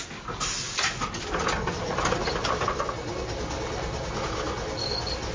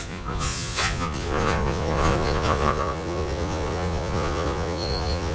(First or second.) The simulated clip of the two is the second